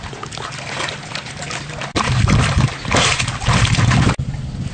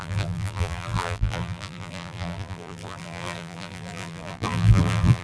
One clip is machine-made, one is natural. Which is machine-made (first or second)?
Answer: second